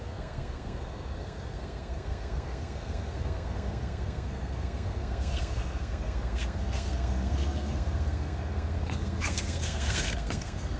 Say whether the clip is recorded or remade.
remade